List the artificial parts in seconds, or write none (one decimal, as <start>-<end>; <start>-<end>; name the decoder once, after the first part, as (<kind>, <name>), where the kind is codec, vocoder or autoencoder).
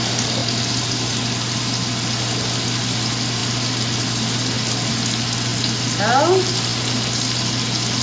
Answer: none